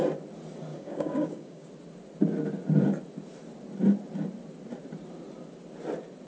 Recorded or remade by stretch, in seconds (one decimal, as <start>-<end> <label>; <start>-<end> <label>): 0.0-0.7 recorded; 0.7-1.7 remade; 1.7-6.3 recorded